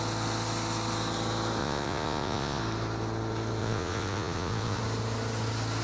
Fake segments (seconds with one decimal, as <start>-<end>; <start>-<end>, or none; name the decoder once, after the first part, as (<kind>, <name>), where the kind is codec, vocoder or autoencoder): 1.6-2.6 (vocoder, Vocos); 3.6-4.8